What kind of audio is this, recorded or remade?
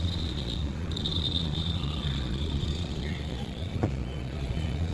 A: remade